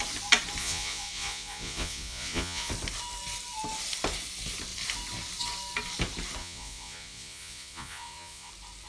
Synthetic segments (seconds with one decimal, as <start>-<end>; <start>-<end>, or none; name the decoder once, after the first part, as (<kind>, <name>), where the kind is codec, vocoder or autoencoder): 0.6-2.7 (vocoder, Vocos); 6.4-8.5